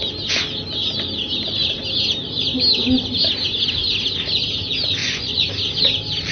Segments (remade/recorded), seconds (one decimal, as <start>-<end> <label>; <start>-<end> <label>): 0.0-5.0 recorded; 5.0-5.5 remade; 5.5-6.3 recorded